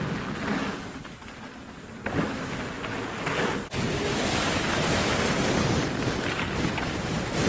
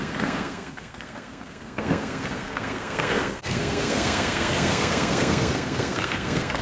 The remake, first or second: second